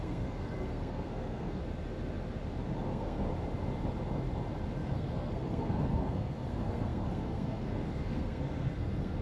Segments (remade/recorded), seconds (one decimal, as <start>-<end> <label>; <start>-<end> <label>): 0.0-1.6 remade; 1.6-2.9 recorded; 2.9-3.3 remade; 3.3-4.8 recorded; 4.8-9.2 remade